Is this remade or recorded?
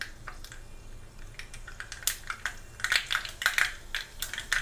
recorded